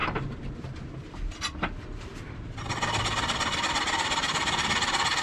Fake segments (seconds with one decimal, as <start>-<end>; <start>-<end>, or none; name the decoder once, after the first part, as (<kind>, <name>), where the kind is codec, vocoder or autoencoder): 0.0-0.7 (vocoder, BigVGAN v2)